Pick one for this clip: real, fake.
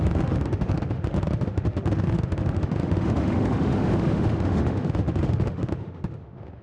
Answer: fake